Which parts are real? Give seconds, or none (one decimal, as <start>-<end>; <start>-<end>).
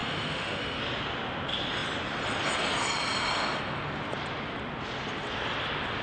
0.8-6.0